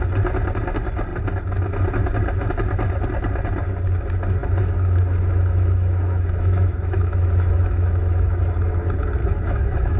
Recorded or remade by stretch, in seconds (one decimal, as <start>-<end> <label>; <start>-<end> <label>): 0.0-4.4 recorded; 4.4-8.4 remade; 8.4-9.2 recorded; 9.2-10.0 remade

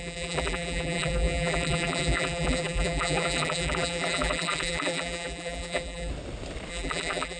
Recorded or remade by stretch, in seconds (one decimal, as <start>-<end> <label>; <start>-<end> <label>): 0.0-6.1 remade; 6.1-6.7 recorded; 6.7-7.4 remade

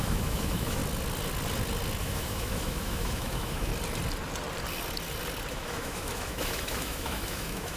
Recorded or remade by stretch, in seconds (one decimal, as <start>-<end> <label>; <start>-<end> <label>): 0.0-0.8 remade; 0.8-2.0 recorded; 2.0-3.7 remade; 3.7-5.5 recorded; 5.5-7.8 remade

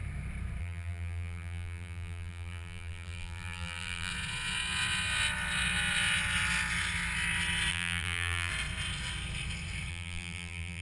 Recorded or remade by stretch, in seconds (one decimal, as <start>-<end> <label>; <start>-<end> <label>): 0.0-0.6 recorded; 0.6-4.1 remade; 4.1-7.7 recorded; 7.7-8.5 remade; 8.5-9.9 recorded; 9.9-10.8 remade